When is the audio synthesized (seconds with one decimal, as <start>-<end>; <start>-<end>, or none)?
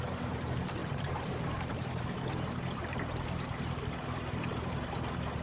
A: 0.8-1.9